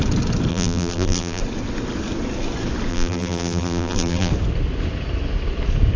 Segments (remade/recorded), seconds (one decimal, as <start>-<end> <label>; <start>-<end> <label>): 0.0-0.5 recorded; 0.5-1.4 remade; 1.4-2.9 recorded; 2.9-4.3 remade; 4.3-6.0 recorded